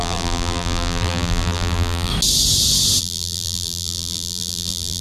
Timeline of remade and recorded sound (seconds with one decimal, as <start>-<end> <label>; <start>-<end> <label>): 0.0-2.1 remade; 2.1-3.0 recorded; 3.0-5.0 remade